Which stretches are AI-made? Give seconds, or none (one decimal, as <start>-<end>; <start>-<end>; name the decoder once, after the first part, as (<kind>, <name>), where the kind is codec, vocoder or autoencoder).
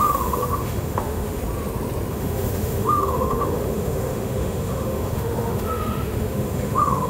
0.0-1.4 (autoencoder, DAC-VAE); 2.1-7.1